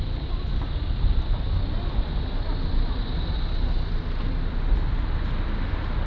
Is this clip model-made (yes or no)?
no